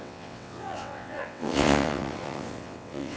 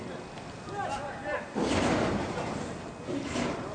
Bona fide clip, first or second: second